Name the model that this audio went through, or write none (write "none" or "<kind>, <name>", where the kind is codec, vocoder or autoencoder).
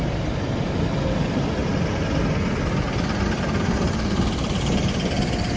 none